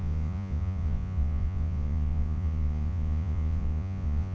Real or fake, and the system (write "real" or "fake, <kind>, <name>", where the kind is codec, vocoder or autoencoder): fake, vocoder, Vocos